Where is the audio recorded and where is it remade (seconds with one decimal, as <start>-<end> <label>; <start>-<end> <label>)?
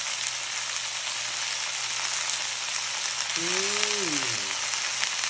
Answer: 0.0-5.3 recorded